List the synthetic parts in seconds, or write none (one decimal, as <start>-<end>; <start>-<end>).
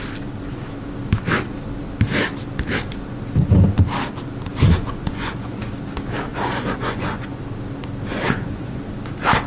4.5-5.7; 6.3-7.4; 8.1-8.8